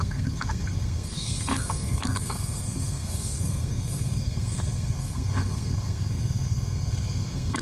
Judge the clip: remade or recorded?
remade